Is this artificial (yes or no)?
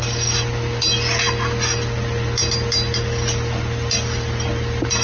no